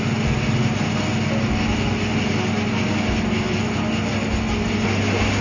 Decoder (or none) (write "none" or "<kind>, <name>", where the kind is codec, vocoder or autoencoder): none